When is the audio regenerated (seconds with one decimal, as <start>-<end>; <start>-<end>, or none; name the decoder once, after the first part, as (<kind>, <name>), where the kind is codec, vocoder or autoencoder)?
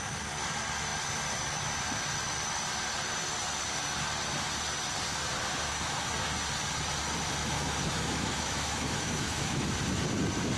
7.4-9.7 (autoencoder, DAC-VAE)